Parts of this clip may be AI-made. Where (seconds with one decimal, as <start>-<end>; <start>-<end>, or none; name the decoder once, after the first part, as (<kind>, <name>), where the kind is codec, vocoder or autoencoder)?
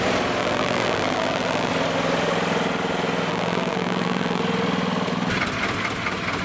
0.4-1.7 (vocoder, BigVGAN v2); 3.3-4.4